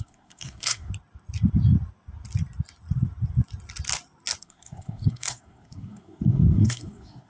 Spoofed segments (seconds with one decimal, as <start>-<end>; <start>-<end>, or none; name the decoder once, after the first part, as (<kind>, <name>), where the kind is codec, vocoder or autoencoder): 0.0-0.9 (codec, SNAC); 4.4-7.3